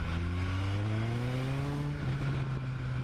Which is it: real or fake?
real